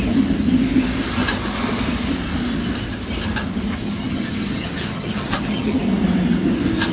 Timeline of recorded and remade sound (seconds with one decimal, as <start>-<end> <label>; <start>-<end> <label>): 0.0-3.8 recorded; 3.8-5.8 remade; 5.8-6.9 recorded